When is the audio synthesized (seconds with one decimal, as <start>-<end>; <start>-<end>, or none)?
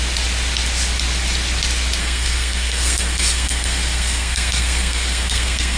2.0-5.8